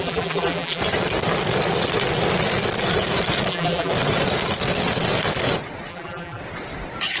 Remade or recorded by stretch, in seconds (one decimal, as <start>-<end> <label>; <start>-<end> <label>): 0.0-0.8 remade; 0.8-3.5 recorded; 3.5-3.9 remade; 3.9-5.9 recorded; 5.9-6.4 remade; 6.4-7.2 recorded